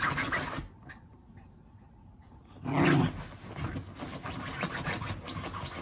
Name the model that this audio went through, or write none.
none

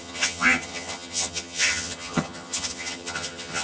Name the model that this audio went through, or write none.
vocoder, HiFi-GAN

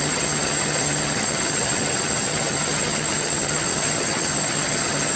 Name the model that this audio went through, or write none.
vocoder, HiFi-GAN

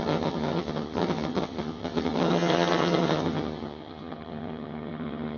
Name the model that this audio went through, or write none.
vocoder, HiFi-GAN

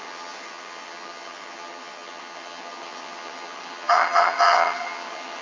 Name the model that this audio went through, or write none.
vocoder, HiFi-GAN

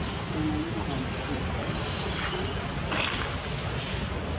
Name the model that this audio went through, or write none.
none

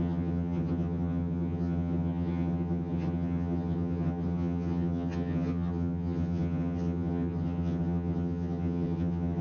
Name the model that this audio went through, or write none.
vocoder, HiFi-GAN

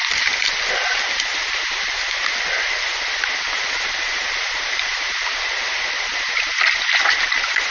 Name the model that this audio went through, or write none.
none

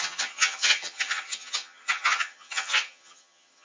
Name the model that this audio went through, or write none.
vocoder, HiFi-GAN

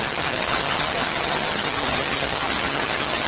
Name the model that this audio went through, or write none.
vocoder, HiFi-GAN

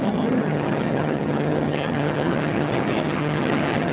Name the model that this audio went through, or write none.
vocoder, HiFi-GAN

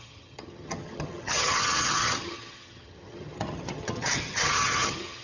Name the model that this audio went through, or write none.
vocoder, HiFi-GAN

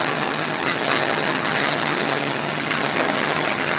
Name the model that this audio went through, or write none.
vocoder, HiFi-GAN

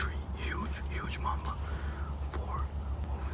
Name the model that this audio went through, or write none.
none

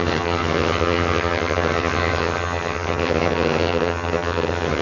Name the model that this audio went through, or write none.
vocoder, HiFi-GAN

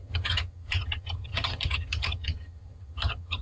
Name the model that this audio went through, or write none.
vocoder, HiFi-GAN